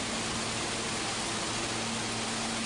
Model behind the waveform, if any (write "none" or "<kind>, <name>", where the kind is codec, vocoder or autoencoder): none